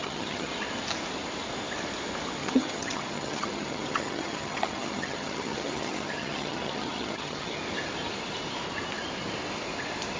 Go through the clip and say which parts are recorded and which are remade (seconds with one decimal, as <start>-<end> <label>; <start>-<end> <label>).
0.0-0.5 remade; 0.5-2.4 recorded; 2.4-7.6 remade; 7.6-10.2 recorded